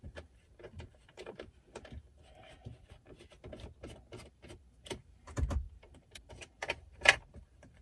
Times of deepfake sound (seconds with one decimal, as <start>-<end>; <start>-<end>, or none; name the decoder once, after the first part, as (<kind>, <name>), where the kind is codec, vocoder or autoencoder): 0.0-2.6 (vocoder, BigVGAN v2); 4.3-7.8